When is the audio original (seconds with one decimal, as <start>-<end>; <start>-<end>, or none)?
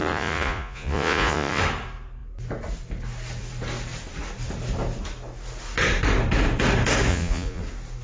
1.6-7.1; 7.6-8.0